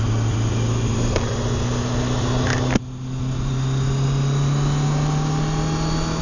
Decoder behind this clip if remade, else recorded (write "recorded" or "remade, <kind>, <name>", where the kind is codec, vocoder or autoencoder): recorded